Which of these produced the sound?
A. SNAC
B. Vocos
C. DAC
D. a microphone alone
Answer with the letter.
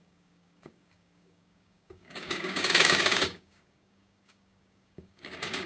C